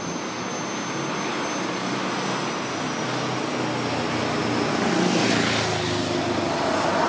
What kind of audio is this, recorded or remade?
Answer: recorded